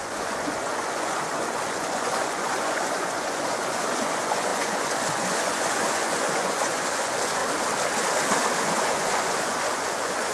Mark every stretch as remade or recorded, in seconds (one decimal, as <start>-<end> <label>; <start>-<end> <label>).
0.0-7.4 remade; 7.4-8.6 recorded; 8.6-10.3 remade